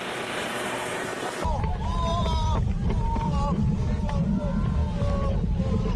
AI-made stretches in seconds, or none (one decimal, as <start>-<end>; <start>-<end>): 0.0-1.1; 1.6-6.0